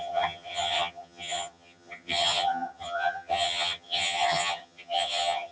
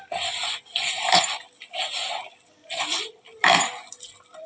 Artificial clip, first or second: first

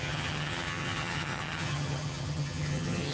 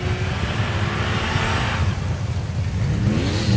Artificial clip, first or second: first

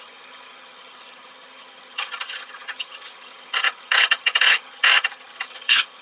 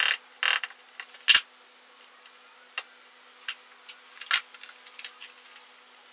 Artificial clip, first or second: first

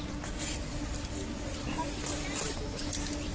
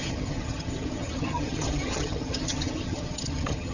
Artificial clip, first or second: second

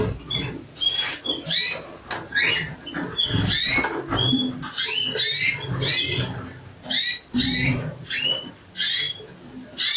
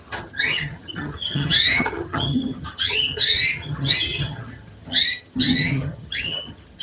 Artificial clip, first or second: second